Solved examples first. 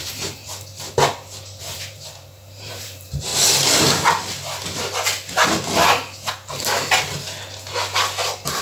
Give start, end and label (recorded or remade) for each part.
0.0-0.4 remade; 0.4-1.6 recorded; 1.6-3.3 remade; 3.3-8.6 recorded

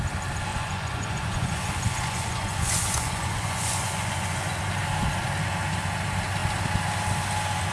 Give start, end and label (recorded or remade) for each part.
0.0-0.5 recorded; 0.5-4.6 remade; 4.6-7.7 recorded

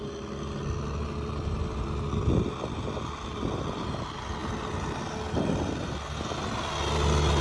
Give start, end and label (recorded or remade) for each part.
0.0-7.4 recorded

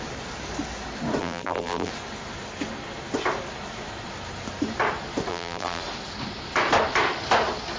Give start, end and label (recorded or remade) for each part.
0.0-1.2 recorded; 1.2-1.9 remade; 1.9-5.3 recorded; 5.3-5.8 remade; 5.8-7.8 recorded

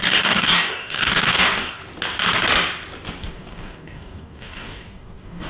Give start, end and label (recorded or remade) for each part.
0.0-1.8 remade; 1.8-3.2 recorded; 3.2-5.5 remade

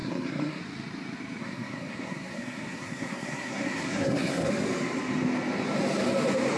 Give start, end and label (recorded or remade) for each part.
0.0-0.6 remade; 0.6-1.4 recorded; 1.4-4.5 remade; 4.5-6.6 recorded